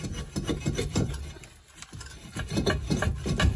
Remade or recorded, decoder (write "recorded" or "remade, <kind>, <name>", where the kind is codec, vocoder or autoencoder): recorded